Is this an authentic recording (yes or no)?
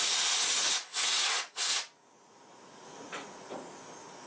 no